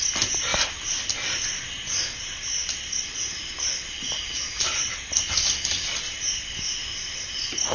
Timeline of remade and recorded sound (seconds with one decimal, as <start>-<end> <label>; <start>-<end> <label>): 0.0-7.7 recorded